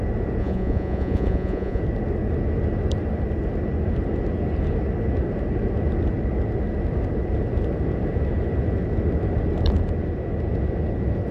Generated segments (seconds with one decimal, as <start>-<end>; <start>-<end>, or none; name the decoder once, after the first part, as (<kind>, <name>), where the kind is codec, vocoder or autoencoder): 0.4-1.8 (vocoder, Vocos)